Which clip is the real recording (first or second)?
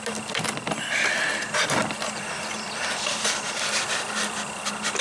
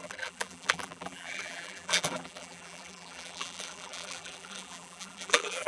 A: first